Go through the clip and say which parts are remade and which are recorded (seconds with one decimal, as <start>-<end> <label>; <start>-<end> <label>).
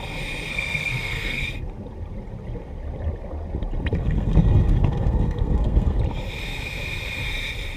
0.0-0.5 recorded; 0.5-1.4 remade; 1.4-4.0 recorded; 4.0-6.0 remade; 6.0-7.8 recorded